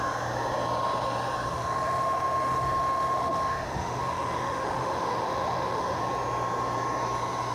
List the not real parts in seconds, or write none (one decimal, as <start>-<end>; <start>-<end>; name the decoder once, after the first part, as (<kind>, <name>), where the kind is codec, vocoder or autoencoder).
1.5-6.0 (autoencoder, DAC-VAE)